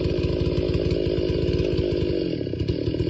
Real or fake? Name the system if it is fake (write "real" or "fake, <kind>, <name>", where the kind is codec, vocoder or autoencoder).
real